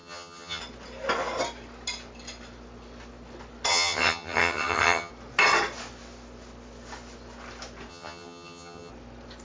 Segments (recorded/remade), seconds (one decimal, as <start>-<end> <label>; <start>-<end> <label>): 0.0-0.6 remade; 0.6-3.7 recorded; 3.7-5.1 remade; 5.1-7.9 recorded; 7.9-8.9 remade; 8.9-9.4 recorded